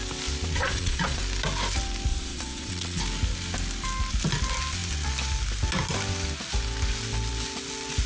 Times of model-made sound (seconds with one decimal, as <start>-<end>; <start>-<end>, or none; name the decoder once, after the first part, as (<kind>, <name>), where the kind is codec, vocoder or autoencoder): 0.6-1.2 (vocoder, Vocos); 2.1-3.0